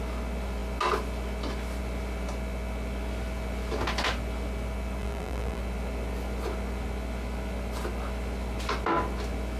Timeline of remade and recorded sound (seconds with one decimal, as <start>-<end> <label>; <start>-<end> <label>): 0.0-5.0 recorded; 5.0-5.6 remade; 5.6-9.6 recorded